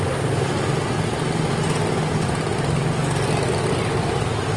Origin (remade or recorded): recorded